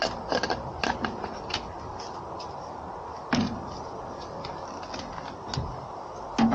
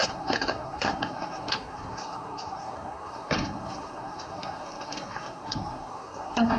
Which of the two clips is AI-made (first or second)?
second